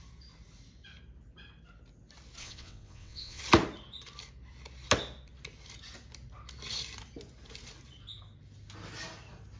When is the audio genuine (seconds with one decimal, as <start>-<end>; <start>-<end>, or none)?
0.0-2.4; 3.4-9.6